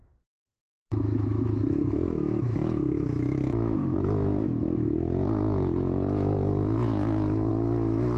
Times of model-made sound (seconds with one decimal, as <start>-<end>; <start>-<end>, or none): 0.0-8.2